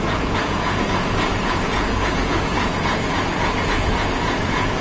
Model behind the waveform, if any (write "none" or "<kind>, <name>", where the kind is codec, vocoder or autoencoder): vocoder, Vocos